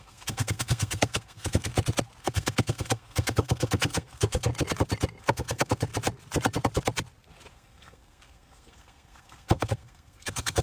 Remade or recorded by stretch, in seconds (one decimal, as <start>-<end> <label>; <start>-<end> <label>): 0.0-1.7 remade; 1.7-2.2 recorded; 2.2-4.5 remade; 4.5-5.2 recorded; 5.2-5.9 remade; 5.9-7.5 recorded; 7.5-10.6 remade